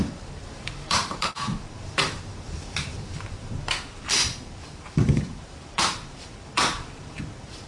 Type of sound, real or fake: fake